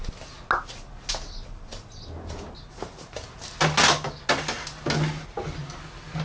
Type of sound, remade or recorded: recorded